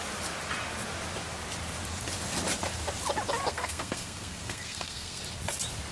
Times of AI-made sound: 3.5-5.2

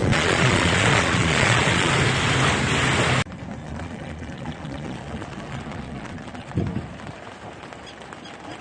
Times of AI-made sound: 0.0-1.9; 3.6-6.6

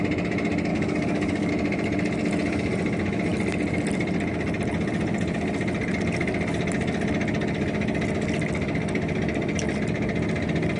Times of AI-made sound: 0.7-1.5

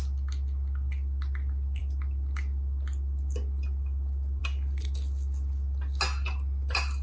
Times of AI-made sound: none

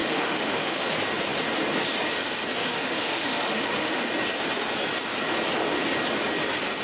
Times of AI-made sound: 0.0-0.8; 2.6-4.0

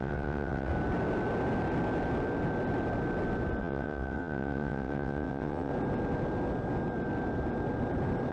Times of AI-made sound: 0.0-0.7; 3.6-5.7

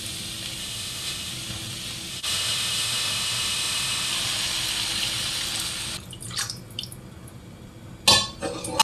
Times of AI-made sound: 0.6-1.3; 2.1-4.1